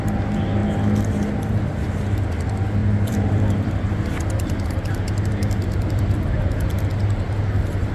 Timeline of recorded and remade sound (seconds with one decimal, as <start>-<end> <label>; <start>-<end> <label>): 0.0-2.8 recorded; 2.8-3.7 remade; 3.7-7.9 recorded